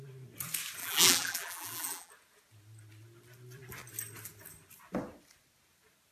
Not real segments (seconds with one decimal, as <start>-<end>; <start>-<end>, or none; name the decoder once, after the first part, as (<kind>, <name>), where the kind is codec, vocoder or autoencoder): 0.8-2.1 (vocoder, BigVGAN v2)